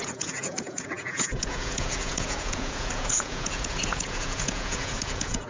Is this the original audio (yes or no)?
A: no